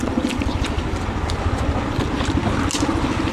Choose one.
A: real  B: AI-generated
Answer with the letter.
A